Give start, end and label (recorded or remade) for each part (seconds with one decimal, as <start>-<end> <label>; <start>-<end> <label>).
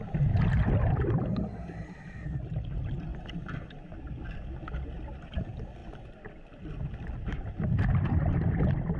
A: 0.0-5.8 recorded; 5.8-6.3 remade; 6.3-9.0 recorded